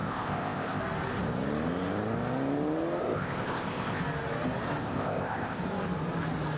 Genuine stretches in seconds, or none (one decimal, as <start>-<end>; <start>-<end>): 0.8-3.0; 4.0-4.8; 5.6-6.6